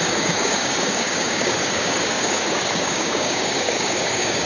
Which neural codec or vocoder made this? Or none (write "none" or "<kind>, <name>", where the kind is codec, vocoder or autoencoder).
codec, DAC